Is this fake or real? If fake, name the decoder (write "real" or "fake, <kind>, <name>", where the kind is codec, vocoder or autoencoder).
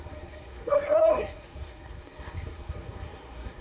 fake, codec, SNAC